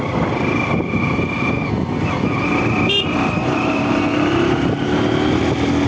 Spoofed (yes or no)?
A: no